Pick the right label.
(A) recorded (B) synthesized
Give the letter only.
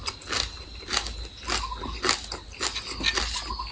A